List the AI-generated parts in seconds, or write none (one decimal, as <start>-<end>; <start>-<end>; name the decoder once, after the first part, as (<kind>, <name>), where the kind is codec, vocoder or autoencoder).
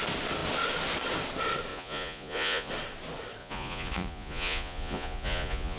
1.7-2.7 (vocoder, Vocos); 3.4-5.8